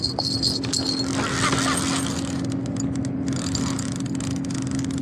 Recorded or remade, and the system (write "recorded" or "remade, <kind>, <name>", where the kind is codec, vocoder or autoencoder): recorded